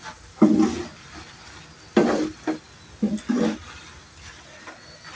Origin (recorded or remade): recorded